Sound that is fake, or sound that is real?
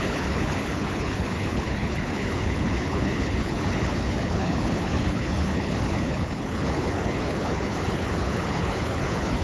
fake